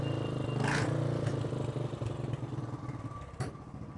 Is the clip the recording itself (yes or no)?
yes